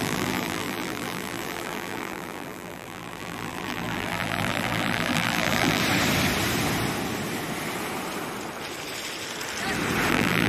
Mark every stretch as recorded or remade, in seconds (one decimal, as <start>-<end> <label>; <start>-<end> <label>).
0.0-5.8 remade; 5.8-10.1 recorded; 10.1-10.5 remade